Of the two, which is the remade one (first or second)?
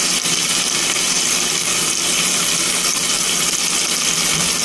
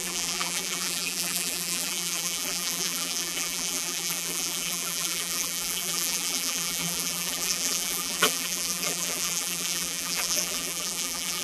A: second